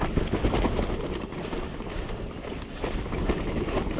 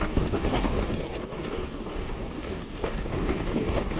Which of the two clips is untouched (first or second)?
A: first